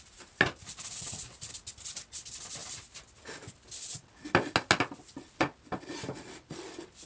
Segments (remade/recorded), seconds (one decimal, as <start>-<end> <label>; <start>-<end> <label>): 0.0-7.1 recorded